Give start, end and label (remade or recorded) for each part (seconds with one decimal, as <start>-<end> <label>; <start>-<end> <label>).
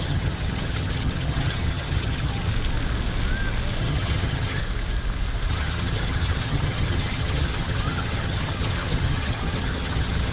0.0-2.5 remade; 2.5-3.8 recorded; 3.8-4.6 remade; 4.6-5.5 recorded; 5.5-10.3 remade